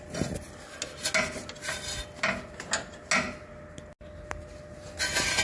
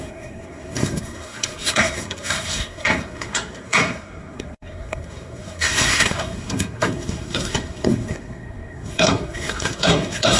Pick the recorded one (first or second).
first